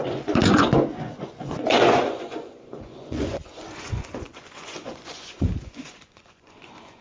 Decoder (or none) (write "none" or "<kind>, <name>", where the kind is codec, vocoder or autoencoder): vocoder, Vocos